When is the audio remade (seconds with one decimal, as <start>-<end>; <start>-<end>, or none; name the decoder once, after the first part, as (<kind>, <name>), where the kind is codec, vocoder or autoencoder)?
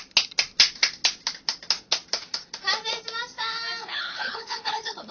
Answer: 3.8-5.1 (codec, HILCodec)